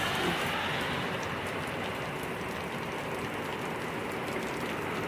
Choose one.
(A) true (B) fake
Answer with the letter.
A